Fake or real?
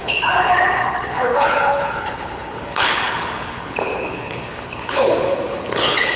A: fake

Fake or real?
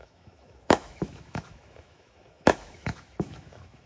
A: fake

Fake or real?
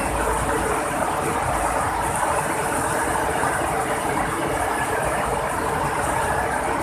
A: real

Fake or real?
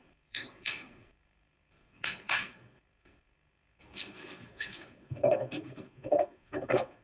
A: fake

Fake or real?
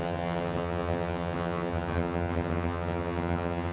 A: fake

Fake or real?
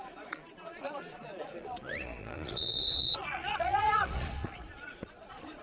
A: fake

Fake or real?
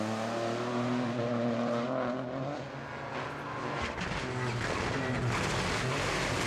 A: real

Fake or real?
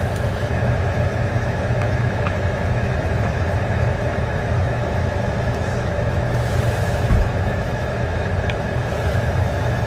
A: fake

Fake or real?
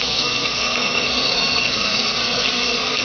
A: fake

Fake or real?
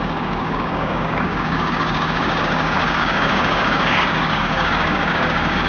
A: fake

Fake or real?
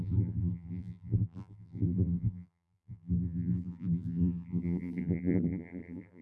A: fake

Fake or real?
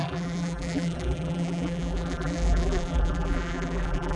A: fake